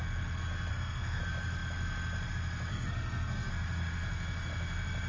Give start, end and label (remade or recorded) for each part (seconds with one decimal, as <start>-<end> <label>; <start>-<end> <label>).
0.0-0.7 recorded; 0.7-1.2 remade; 1.2-2.7 recorded; 2.7-3.5 remade; 3.5-5.1 recorded